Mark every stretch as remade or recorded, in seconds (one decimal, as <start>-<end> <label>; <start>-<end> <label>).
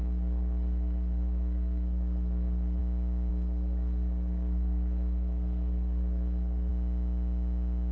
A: 0.0-2.8 remade; 2.8-3.3 recorded; 3.3-6.7 remade; 6.7-7.9 recorded